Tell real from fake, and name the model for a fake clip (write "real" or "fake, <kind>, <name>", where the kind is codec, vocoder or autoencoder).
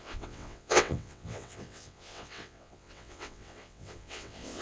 fake, vocoder, WaveNeXt